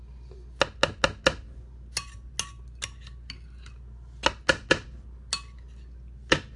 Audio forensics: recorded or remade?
recorded